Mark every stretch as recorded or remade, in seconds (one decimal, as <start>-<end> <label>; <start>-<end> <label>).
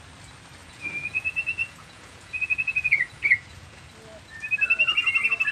0.0-0.6 recorded; 0.6-3.9 remade; 3.9-5.5 recorded